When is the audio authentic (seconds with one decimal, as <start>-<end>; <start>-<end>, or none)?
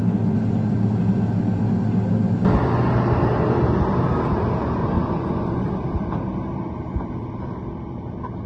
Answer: 0.0-4.8; 5.6-8.5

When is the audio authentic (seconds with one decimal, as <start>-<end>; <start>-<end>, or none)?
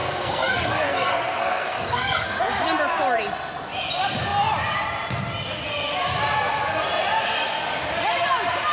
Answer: 2.4-8.7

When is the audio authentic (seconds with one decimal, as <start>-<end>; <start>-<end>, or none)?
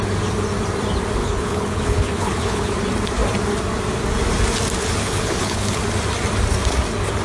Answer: 0.0-1.2; 2.8-4.8; 5.8-7.2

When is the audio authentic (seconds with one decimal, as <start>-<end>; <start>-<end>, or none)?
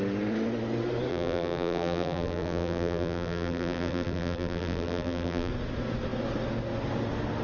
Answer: 0.0-1.1; 5.5-7.4